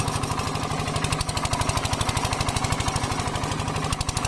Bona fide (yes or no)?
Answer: yes